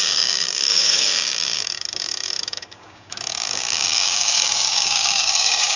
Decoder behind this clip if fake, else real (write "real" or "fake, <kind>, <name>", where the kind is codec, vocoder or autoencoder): fake, codec, DAC